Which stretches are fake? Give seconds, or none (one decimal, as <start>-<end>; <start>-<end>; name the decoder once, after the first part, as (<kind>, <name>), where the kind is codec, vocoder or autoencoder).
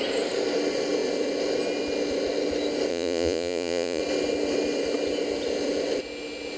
2.9-4.0 (vocoder, Vocos)